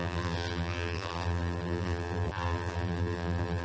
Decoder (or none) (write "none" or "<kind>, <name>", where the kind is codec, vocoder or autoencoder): vocoder, BigVGAN v2